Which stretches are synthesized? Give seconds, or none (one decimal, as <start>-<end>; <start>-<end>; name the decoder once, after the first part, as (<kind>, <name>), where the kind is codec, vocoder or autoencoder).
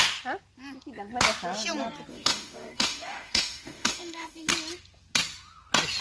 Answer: 2.1-4.5 (autoencoder, DAC-VAE)